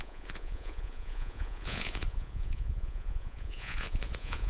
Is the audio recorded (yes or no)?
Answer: no